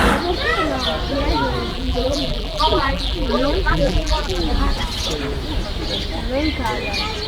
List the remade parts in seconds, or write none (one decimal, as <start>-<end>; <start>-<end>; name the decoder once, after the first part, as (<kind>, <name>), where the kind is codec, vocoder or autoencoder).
1.7-4.4 (vocoder, BigVGAN v2)